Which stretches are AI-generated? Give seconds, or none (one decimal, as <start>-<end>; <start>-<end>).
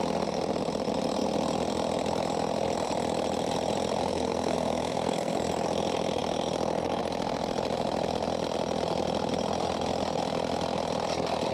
4.0-5.4